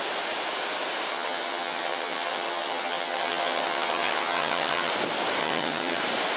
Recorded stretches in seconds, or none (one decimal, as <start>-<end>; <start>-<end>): 0.0-1.1; 4.9-5.4; 6.0-6.4